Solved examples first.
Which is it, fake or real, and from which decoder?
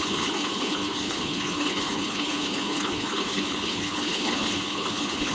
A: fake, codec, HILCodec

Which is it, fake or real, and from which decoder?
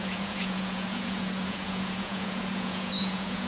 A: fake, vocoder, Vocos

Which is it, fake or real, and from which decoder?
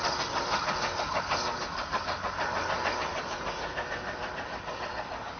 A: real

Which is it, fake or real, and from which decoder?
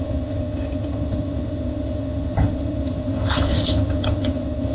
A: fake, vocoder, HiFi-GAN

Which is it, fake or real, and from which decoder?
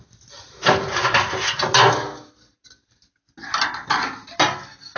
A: real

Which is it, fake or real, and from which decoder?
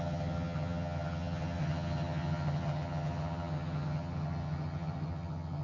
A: fake, vocoder, HiFi-GAN